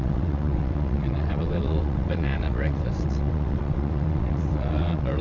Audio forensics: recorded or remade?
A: remade